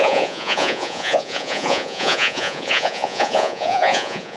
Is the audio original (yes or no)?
no